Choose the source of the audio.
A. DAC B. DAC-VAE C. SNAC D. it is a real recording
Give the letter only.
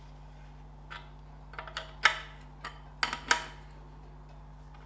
D